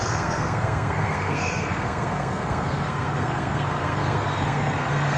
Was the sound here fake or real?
fake